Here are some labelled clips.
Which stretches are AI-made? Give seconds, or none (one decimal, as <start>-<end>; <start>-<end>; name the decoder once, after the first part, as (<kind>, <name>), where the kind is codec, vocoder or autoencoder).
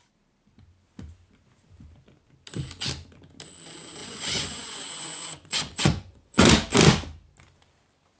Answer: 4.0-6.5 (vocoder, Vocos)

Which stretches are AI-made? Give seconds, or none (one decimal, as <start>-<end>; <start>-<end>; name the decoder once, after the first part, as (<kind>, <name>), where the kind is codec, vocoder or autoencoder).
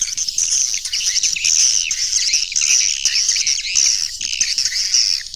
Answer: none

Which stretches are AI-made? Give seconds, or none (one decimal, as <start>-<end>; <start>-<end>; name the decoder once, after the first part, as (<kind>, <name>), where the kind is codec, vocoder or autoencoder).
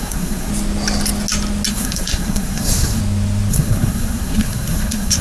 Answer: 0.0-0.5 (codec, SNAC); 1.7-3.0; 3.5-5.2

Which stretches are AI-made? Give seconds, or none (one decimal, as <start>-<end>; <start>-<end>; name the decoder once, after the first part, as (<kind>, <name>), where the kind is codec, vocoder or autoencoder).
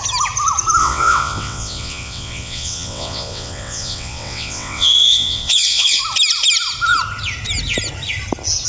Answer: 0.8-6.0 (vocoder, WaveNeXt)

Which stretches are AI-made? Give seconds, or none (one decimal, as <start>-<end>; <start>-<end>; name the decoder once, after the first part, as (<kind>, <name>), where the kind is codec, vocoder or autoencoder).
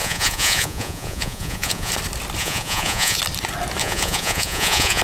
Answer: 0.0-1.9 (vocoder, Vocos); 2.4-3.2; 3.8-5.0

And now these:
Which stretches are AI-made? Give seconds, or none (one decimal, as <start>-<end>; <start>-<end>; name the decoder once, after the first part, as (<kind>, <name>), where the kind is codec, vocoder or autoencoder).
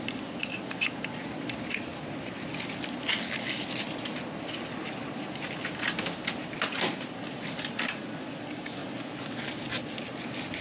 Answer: none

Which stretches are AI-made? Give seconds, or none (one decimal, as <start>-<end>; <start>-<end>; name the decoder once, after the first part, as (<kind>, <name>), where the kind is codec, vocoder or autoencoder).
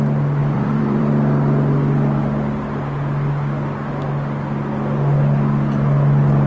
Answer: 0.4-1.1 (vocoder, BigVGAN v2)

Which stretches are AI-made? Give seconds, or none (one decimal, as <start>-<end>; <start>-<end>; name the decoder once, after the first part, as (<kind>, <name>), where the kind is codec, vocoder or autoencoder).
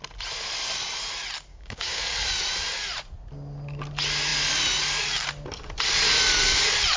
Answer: 1.5-2.0 (codec, DAC)